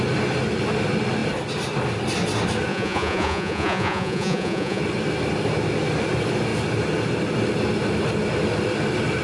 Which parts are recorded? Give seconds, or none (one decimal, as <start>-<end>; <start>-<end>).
0.0-2.7; 4.8-9.2